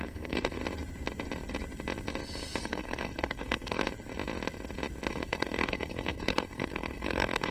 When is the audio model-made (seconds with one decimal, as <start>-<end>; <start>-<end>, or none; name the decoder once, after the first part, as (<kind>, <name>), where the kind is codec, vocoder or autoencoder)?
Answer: 0.0-0.6 (codec, SNAC); 2.6-3.8; 5.1-7.5